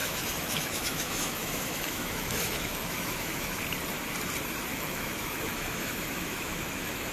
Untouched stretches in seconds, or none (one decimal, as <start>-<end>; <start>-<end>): 3.6-4.7